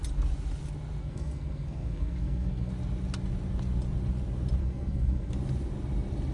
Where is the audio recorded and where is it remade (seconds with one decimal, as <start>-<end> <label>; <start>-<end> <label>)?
0.0-1.0 recorded; 1.0-2.7 remade; 2.7-4.6 recorded; 4.6-5.3 remade; 5.3-6.3 recorded